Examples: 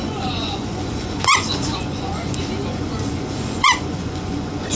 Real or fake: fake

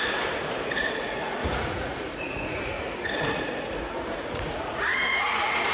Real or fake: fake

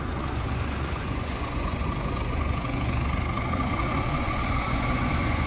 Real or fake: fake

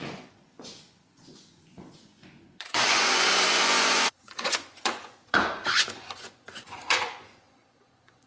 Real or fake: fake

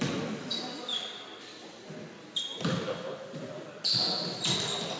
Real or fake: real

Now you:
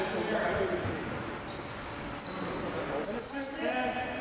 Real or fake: real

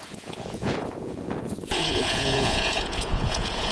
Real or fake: fake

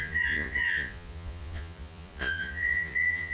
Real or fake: fake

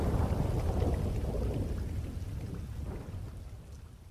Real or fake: real